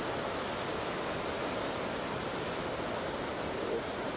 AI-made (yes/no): no